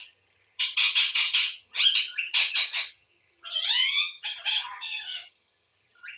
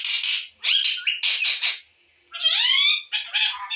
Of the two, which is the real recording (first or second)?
second